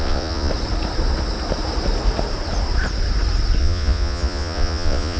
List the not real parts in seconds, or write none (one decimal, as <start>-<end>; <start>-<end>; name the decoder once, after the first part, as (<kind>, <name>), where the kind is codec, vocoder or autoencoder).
0.0-0.5 (vocoder, Vocos); 3.6-5.2

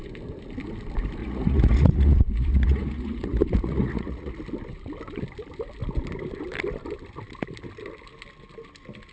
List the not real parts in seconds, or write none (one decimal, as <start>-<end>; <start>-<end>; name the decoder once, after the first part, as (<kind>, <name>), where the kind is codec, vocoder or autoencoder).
1.2-4.3 (vocoder, Vocos)

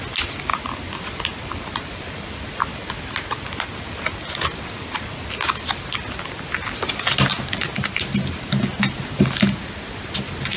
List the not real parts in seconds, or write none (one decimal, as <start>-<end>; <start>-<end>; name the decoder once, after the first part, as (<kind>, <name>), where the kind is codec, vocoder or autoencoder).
none